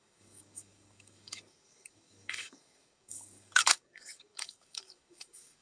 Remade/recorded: remade